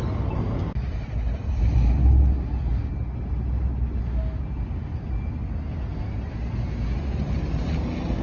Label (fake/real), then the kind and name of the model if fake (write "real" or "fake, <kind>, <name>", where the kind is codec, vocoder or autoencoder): real